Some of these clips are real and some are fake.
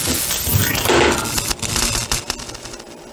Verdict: fake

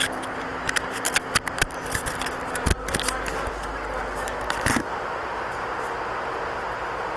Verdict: real